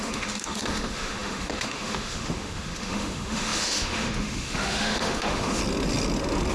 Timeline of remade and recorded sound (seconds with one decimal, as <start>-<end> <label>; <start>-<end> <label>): 0.0-5.6 remade; 5.6-6.5 recorded

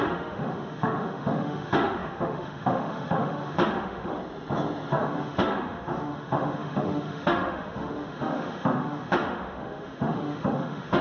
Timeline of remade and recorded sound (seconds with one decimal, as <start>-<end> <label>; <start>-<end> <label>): 0.0-4.2 remade; 4.2-4.9 recorded; 4.9-11.0 remade

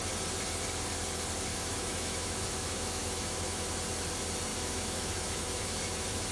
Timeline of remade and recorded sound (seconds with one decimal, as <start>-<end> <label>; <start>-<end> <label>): 0.0-1.5 recorded; 1.5-3.7 remade; 3.7-4.5 recorded; 4.5-6.3 remade

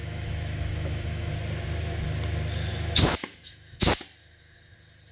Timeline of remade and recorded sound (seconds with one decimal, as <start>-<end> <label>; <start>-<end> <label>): 0.0-1.3 remade; 1.3-2.7 recorded; 2.7-3.9 remade; 3.9-5.1 recorded

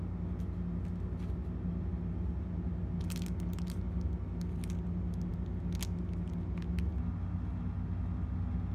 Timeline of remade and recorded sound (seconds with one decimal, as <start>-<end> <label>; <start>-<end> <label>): 0.0-8.7 recorded

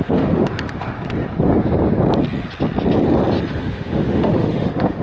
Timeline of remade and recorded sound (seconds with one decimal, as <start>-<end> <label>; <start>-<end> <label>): 0.0-0.5 remade; 0.5-3.5 recorded; 3.5-5.0 remade

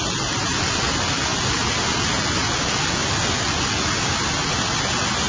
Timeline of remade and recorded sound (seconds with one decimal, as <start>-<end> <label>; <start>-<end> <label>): 0.0-5.3 recorded

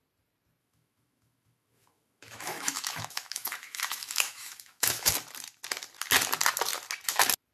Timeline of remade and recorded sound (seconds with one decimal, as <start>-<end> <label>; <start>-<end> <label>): 0.0-0.6 recorded; 0.6-5.1 remade; 5.1-7.5 recorded